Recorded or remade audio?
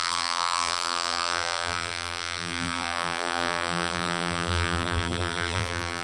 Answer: remade